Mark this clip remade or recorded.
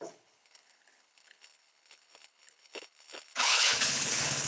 remade